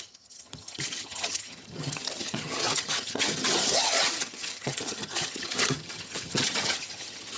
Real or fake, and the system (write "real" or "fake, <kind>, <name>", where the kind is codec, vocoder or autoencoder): fake, vocoder, HiFi-GAN